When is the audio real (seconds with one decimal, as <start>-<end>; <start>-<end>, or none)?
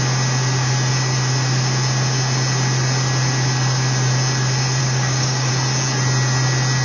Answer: 0.0-4.8; 5.5-6.8